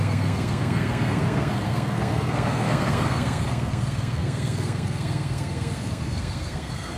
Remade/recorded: remade